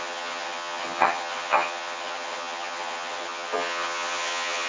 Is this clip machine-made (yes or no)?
yes